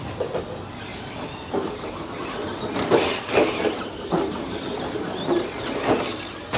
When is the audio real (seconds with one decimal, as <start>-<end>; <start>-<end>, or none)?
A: 0.0-6.6